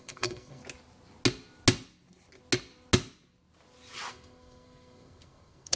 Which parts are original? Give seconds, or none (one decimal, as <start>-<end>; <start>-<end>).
0.6-4.1